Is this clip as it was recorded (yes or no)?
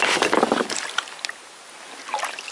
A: yes